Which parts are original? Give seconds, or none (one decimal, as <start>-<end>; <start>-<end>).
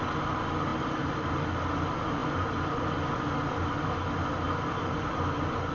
0.0-5.7